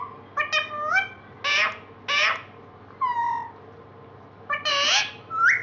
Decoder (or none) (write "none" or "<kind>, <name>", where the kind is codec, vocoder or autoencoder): none